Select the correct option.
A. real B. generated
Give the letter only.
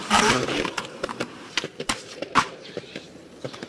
B